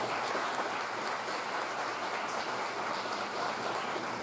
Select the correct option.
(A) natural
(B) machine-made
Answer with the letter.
A